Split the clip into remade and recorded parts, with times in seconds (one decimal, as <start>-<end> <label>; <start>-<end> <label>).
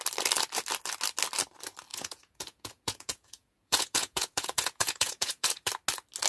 0.0-1.9 recorded; 1.9-5.7 remade; 5.7-6.3 recorded